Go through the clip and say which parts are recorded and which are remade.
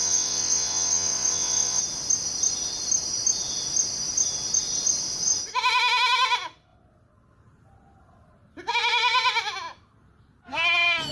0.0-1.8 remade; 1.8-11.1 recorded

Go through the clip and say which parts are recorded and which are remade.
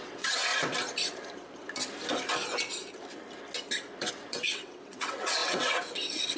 0.0-0.5 remade; 0.5-4.3 recorded; 4.3-6.4 remade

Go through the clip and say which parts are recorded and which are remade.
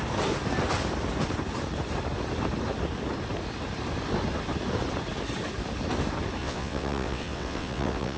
0.0-6.4 recorded; 6.4-8.2 remade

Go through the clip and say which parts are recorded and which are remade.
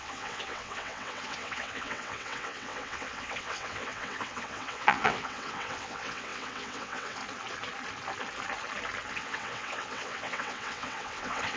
0.0-7.2 remade; 7.2-9.1 recorded; 9.1-11.6 remade